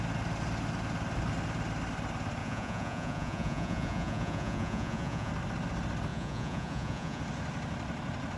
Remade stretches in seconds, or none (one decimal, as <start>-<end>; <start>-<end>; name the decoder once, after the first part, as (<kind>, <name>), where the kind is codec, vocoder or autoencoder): 2.4-5.3 (vocoder, Vocos); 6.1-7.2